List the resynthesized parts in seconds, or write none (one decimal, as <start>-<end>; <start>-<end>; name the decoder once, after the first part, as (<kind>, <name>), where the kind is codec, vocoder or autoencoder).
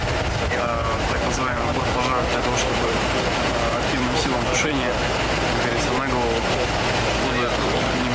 0.8-1.8 (vocoder, BigVGAN v2); 2.6-4.7